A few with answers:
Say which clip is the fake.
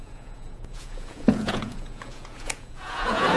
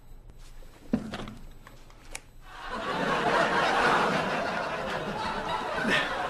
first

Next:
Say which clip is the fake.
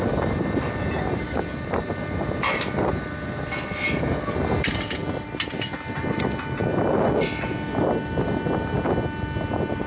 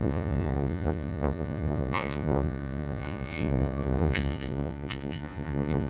second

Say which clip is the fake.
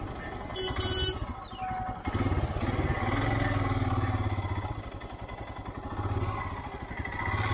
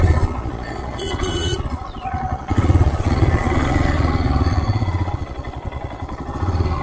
second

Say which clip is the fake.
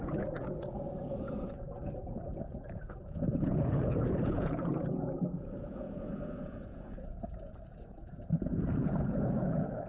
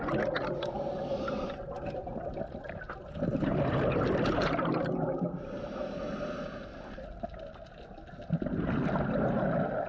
first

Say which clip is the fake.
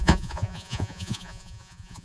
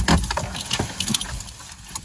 first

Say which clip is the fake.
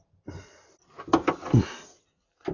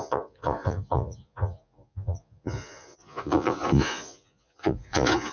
second